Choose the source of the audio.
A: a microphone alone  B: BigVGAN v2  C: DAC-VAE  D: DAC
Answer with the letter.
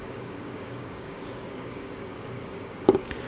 D